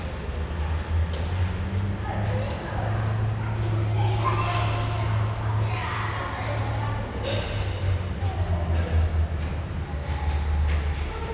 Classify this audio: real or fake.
real